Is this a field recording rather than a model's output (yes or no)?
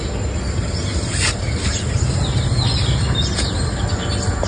yes